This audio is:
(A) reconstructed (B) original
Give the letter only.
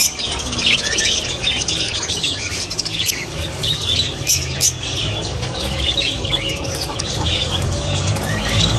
A